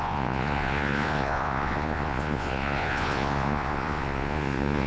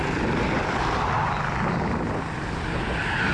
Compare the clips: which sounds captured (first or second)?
second